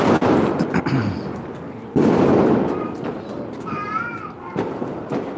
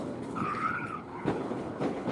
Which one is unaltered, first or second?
first